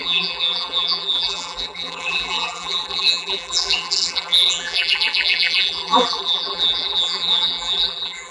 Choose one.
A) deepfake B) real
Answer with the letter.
A